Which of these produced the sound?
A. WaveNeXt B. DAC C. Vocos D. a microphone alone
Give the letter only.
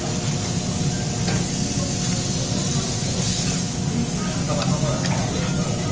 D